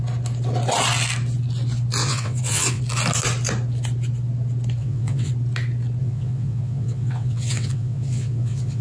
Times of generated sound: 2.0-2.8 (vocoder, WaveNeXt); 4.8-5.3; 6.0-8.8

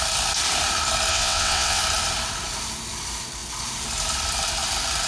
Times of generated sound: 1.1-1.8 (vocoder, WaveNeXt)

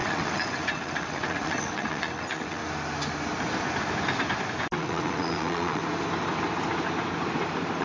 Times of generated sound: 0.0-2.6 (vocoder, WaveNeXt); 4.8-5.8

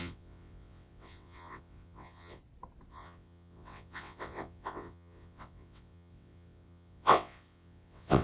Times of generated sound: 0.0-2.4 (vocoder, WaveNeXt); 2.9-8.2